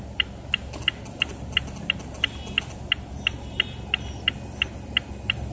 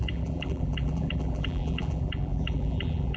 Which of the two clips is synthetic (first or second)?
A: second